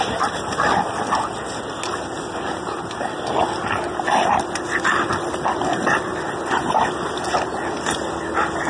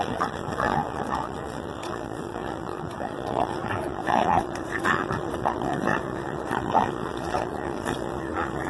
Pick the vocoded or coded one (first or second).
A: second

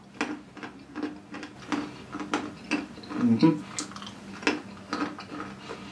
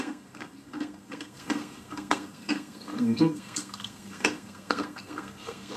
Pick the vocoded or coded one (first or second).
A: second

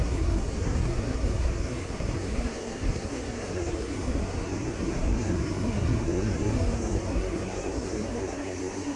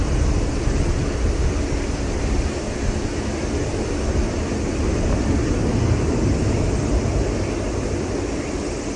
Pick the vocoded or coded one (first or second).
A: first